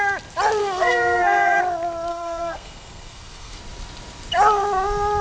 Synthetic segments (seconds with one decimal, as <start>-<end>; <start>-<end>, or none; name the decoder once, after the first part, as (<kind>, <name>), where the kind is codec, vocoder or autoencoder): 0.6-1.6 (codec, SNAC); 2.1-3.6